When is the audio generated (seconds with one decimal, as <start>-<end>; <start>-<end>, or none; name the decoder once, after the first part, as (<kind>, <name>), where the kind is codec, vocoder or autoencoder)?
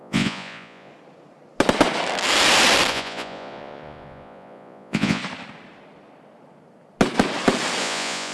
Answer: 0.0-0.9 (vocoder, Vocos); 2.9-5.2; 7.8-8.3